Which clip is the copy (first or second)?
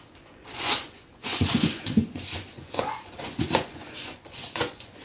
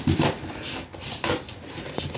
first